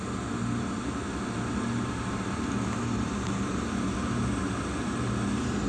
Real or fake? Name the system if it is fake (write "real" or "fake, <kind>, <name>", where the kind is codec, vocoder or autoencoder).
fake, vocoder, BigVGAN v2